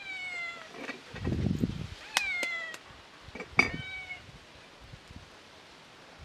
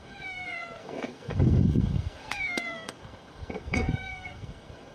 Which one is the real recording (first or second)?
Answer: first